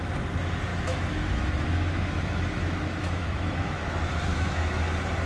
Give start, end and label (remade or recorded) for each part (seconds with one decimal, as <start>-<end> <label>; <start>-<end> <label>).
0.0-0.7 recorded; 0.7-3.9 remade; 3.9-4.3 recorded; 4.3-4.8 remade; 4.8-5.3 recorded